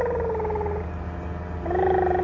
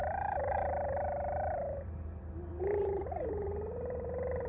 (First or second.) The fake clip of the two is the second